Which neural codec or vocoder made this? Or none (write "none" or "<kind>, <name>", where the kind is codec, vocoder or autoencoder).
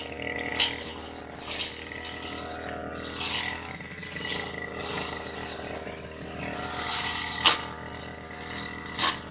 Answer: none